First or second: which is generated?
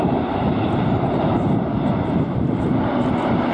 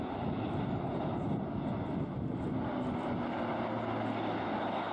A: first